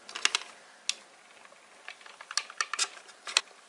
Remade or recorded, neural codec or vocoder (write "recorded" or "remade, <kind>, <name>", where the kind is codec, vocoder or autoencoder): recorded